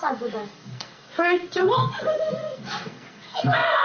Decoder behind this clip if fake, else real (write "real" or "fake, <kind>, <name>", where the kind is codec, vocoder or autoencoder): fake, codec, SNAC